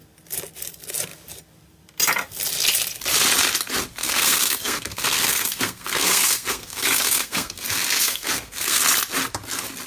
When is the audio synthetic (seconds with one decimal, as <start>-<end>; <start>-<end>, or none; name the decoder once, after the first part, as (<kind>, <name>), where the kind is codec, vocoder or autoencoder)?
4.0-8.8 (codec, SNAC)